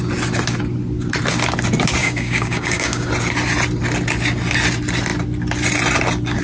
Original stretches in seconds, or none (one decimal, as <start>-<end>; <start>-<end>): 0.0-2.0; 3.1-6.4